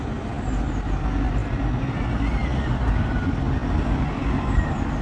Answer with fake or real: real